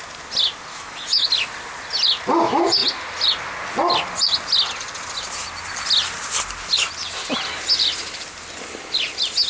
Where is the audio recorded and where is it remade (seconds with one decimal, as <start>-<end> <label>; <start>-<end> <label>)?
0.0-0.7 recorded; 0.7-1.3 remade; 1.3-9.5 recorded